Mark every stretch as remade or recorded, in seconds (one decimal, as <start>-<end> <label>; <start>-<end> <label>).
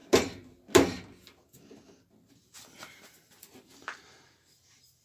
0.0-2.3 recorded; 2.3-5.0 remade